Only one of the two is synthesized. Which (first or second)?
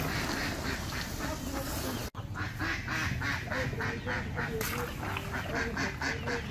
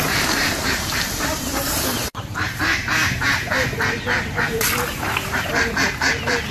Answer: second